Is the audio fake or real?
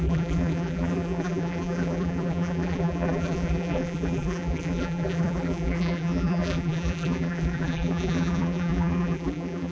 fake